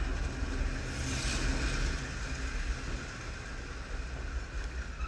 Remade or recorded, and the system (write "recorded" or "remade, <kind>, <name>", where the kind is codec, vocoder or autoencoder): recorded